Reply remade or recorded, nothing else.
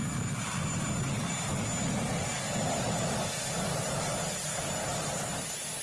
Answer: recorded